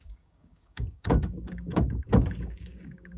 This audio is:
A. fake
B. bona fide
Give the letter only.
A